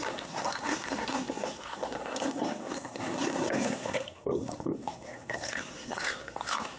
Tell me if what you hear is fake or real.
fake